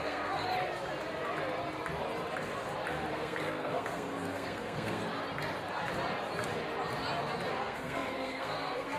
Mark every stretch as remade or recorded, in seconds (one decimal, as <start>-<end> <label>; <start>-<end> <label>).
0.0-0.4 remade; 0.4-3.1 recorded; 3.1-5.0 remade; 5.0-7.5 recorded; 7.5-9.0 remade